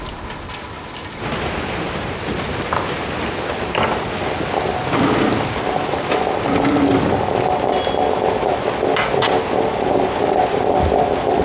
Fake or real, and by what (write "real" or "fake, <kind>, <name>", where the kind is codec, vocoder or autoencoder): real